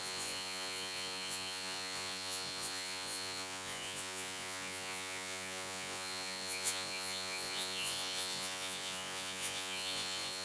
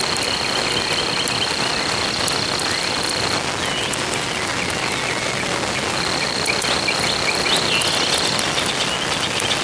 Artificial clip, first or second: first